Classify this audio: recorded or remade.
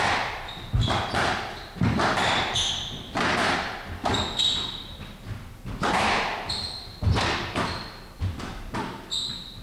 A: remade